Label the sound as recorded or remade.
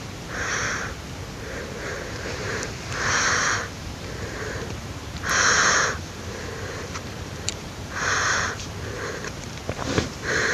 remade